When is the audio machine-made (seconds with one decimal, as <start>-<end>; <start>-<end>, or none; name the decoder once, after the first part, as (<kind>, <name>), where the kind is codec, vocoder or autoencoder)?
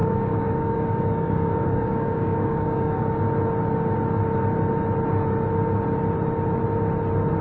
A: 0.0-3.0 (codec, DAC)